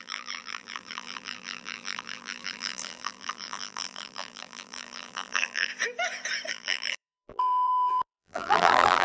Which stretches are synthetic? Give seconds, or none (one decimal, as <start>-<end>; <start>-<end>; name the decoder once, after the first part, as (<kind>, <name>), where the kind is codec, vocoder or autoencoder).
0.0-5.7 (vocoder, BigVGAN v2); 6.5-9.0

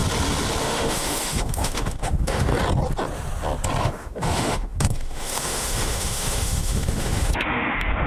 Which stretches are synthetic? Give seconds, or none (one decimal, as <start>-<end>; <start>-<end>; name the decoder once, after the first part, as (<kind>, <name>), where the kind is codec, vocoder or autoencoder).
0.6-2.5 (autoencoder, DAC-VAE); 3.8-8.1

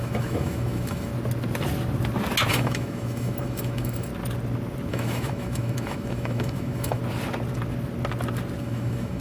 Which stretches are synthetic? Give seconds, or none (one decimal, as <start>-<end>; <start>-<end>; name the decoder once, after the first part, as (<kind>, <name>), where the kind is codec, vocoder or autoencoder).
0.0-1.1 (autoencoder, DAC-VAE); 2.5-4.1; 4.9-7.0; 8.6-9.2

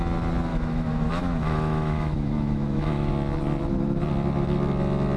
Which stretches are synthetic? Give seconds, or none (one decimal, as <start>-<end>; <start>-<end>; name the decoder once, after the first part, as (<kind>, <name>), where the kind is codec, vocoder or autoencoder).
0.5-3.1 (autoencoder, DAC-VAE)

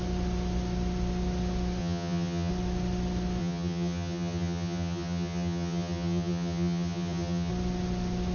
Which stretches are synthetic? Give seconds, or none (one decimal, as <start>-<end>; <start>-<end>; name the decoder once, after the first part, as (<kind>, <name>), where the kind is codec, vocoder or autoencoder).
1.8-2.5 (vocoder, HiFi-GAN); 3.4-7.5

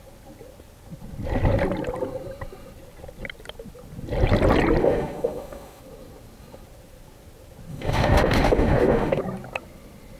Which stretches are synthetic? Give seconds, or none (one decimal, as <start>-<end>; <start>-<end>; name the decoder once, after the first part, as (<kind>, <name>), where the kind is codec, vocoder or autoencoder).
4.8-5.8 (autoencoder, DAC-VAE); 7.7-9.2

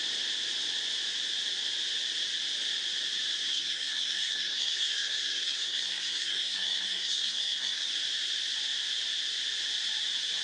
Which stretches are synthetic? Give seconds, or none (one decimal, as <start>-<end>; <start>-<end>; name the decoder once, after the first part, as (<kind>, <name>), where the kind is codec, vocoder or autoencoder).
3.5-7.9 (codec, SNAC)

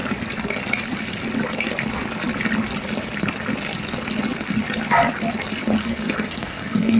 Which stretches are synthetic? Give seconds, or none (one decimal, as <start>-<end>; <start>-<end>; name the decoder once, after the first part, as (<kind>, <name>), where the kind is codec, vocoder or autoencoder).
5.8-7.0 (codec, SNAC)